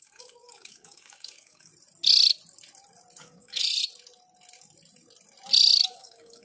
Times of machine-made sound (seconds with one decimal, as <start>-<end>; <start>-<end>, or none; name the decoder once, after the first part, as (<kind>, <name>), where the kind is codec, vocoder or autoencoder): 0.0-1.7 (codec, DAC); 3.2-3.6; 5.9-6.4